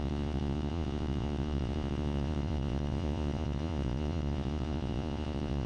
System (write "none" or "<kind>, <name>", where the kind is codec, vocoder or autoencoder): vocoder, Vocos